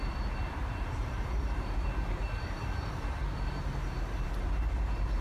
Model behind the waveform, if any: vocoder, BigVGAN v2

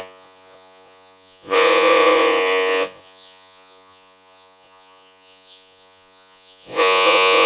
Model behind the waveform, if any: vocoder, Vocos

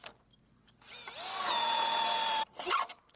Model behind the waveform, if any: none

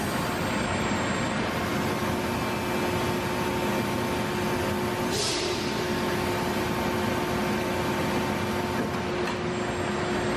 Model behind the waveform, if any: none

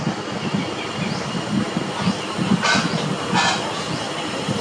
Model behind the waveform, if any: none